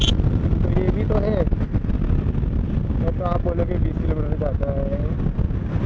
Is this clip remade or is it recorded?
recorded